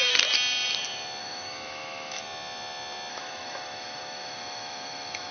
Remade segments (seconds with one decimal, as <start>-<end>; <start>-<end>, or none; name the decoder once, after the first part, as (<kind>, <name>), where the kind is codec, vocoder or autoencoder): 1.2-2.2 (autoencoder, DAC-VAE); 3.1-5.3